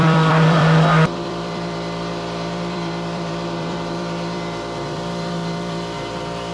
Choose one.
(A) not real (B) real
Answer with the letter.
A